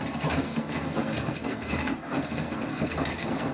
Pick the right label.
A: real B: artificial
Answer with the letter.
B